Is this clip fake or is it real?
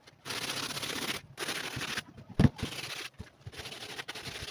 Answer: real